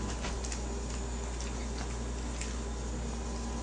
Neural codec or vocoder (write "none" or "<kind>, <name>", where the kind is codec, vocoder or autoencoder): none